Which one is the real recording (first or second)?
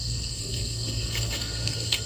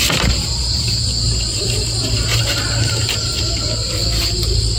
second